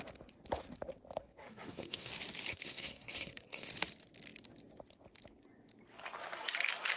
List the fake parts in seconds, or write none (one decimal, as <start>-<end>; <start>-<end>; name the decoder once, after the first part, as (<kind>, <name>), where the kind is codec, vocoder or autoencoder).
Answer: 1.2-2.1 (codec, SNAC); 2.5-3.7